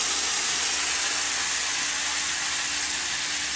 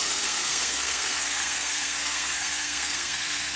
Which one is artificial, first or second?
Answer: second